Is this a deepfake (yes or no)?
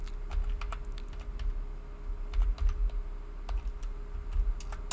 no